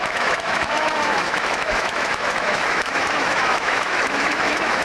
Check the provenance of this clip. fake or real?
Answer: fake